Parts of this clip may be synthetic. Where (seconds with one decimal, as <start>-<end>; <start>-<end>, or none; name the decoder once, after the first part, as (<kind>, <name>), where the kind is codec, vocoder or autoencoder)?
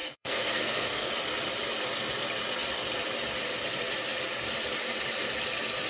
0.0-1.1 (codec, SNAC)